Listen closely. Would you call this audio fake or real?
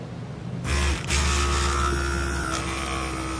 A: real